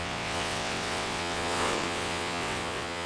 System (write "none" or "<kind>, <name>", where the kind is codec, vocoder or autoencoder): vocoder, WaveNeXt